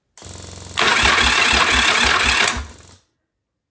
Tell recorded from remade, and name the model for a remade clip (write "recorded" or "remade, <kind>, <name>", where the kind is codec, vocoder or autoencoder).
recorded